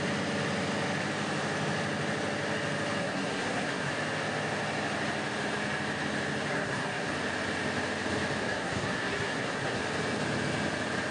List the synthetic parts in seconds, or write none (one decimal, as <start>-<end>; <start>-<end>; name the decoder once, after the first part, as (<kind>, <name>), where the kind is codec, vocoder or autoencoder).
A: 3.0-3.9 (codec, SNAC); 6.5-7.1; 8.4-9.8